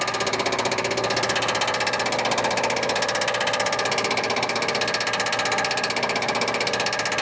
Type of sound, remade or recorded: recorded